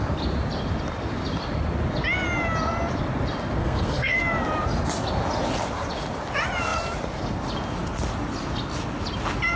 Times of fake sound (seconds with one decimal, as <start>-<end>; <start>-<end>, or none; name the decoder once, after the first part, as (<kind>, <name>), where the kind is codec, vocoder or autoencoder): 3.6-4.2 (codec, SNAC)